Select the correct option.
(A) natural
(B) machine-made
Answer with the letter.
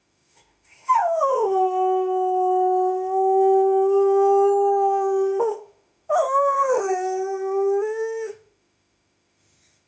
B